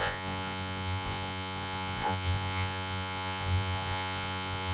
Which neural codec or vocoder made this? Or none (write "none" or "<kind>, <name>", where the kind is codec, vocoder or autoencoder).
vocoder, Vocos